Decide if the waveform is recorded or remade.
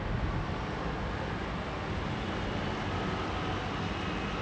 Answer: recorded